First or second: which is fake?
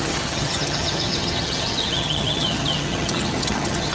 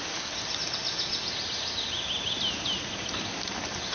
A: first